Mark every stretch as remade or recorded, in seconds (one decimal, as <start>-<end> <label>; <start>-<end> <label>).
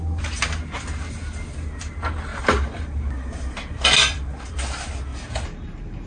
0.0-2.3 recorded; 2.3-3.1 remade; 3.1-5.1 recorded; 5.1-6.1 remade